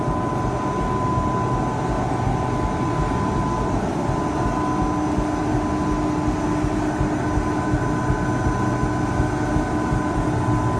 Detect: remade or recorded recorded